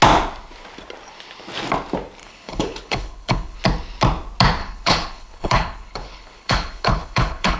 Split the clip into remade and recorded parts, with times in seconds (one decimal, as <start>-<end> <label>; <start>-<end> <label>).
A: 0.0-2.2 recorded; 2.2-3.6 remade; 3.6-4.6 recorded; 4.6-7.6 remade